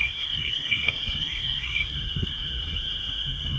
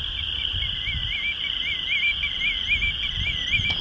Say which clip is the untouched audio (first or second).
second